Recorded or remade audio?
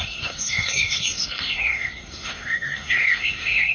remade